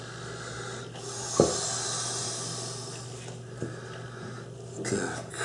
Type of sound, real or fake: real